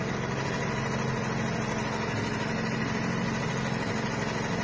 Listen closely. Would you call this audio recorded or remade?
recorded